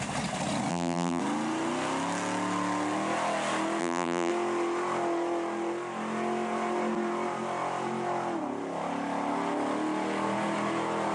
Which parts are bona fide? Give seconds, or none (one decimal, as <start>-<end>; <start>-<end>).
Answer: 0.0-0.7; 1.2-3.8; 4.3-11.1